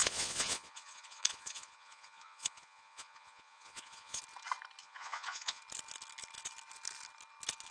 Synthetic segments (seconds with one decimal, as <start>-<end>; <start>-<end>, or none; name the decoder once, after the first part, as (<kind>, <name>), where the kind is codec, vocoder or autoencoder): 0.0-4.2 (vocoder, Vocos); 4.8-5.6

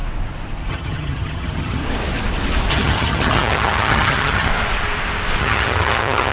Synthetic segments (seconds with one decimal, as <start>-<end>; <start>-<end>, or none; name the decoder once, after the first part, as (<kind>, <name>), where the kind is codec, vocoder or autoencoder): 0.7-1.8 (vocoder, HiFi-GAN); 2.7-4.5; 5.4-6.3

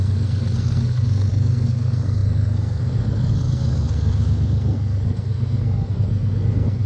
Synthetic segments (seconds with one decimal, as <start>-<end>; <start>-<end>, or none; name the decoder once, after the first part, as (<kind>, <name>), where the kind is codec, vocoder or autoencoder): 0.0-6.9 (codec, SNAC)

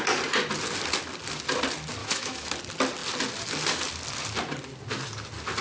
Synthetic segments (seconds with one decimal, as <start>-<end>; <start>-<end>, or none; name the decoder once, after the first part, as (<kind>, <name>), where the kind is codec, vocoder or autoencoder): 2.0-2.5 (autoencoder, DAC-VAE)

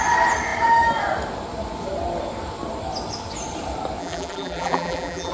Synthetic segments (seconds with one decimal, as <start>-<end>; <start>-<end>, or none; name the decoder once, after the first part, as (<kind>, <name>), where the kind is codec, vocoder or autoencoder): 4.0-5.3 (vocoder, BigVGAN v2)